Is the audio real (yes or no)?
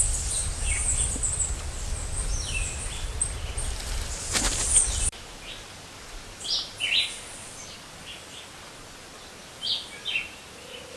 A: yes